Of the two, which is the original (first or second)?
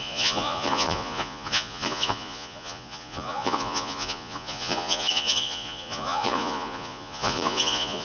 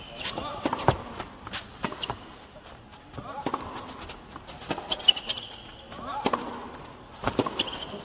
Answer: second